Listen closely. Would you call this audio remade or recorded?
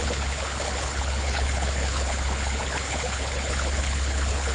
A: remade